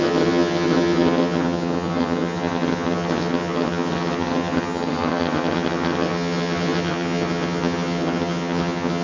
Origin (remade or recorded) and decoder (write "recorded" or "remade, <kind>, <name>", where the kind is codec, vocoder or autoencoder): remade, vocoder, HiFi-GAN